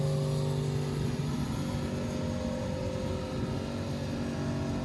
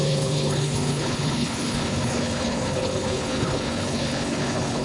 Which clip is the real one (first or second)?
first